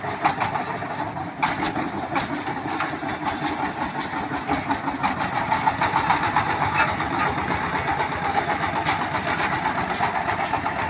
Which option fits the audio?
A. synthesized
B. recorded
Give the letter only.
B